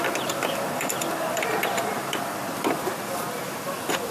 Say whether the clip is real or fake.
fake